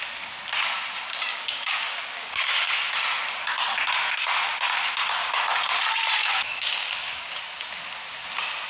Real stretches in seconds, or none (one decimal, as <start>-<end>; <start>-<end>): 0.0-1.3; 2.7-6.2; 7.4-8.7